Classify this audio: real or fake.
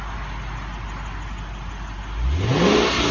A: real